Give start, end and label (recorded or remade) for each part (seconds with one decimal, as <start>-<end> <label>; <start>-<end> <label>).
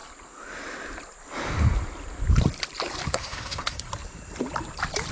0.0-3.1 recorded; 3.1-3.9 remade; 3.9-5.1 recorded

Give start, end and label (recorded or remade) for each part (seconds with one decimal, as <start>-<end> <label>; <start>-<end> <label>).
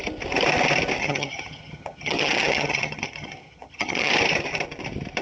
0.0-1.0 recorded; 1.0-4.1 remade; 4.1-5.2 recorded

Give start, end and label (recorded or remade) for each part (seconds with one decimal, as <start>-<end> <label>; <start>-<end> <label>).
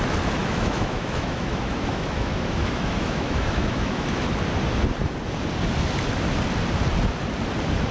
0.0-0.4 recorded; 0.4-4.3 remade; 4.3-7.9 recorded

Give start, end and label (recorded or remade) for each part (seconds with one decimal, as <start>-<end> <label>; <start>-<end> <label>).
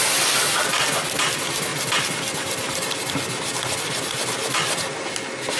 0.0-5.6 recorded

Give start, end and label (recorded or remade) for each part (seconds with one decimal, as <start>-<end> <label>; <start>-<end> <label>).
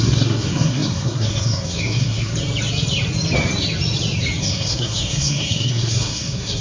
0.0-2.3 remade; 2.3-4.4 recorded; 4.4-6.6 remade